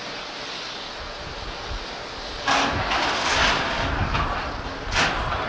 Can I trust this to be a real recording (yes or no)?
yes